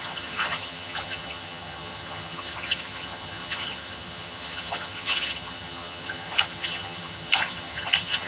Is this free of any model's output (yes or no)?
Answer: no